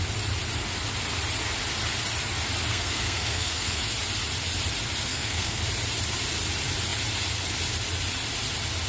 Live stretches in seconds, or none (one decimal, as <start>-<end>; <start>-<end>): 0.0-2.7; 3.8-5.1; 5.6-8.9